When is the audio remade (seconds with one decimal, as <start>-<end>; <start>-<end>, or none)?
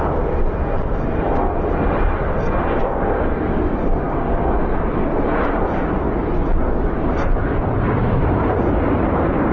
2.8-3.3; 3.9-4.6